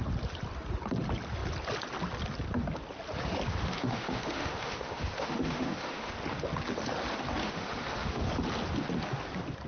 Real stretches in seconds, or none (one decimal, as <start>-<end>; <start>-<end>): 0.0-3.5; 6.1-7.4; 8.3-9.7